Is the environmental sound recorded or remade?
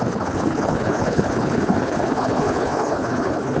remade